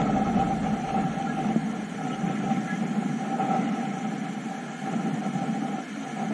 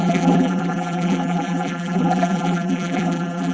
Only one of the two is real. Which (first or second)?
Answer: first